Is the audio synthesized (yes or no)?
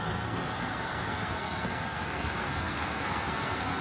yes